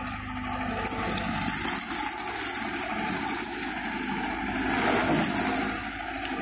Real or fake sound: real